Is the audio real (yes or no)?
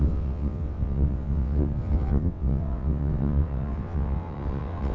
no